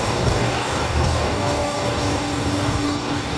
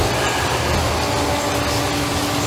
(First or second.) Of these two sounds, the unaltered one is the second